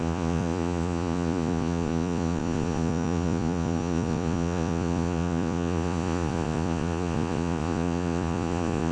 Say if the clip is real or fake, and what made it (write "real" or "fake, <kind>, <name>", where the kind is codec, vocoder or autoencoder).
fake, vocoder, Vocos